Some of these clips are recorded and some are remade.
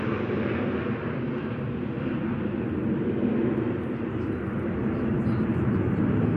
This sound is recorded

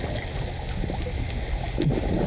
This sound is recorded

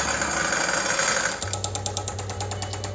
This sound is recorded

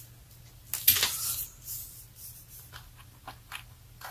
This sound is recorded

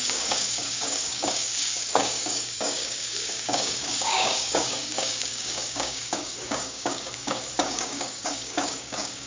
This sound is remade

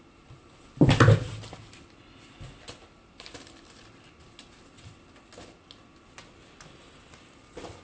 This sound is recorded